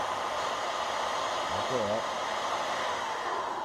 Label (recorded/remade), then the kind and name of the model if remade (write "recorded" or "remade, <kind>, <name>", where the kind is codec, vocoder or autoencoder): recorded